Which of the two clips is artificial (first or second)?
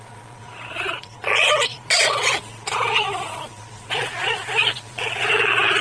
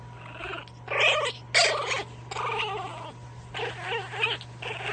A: first